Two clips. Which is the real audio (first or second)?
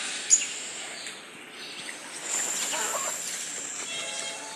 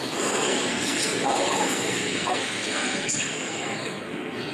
first